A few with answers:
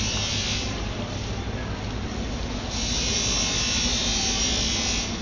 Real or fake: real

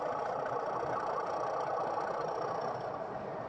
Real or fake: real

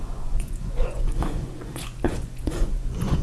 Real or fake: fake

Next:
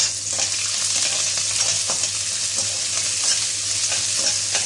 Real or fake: real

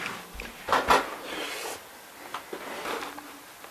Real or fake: real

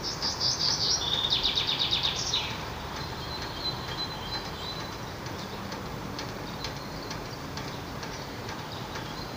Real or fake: fake